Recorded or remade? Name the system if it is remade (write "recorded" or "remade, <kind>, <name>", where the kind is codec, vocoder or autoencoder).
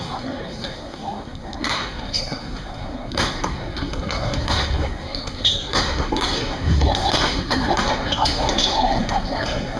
remade, codec, SNAC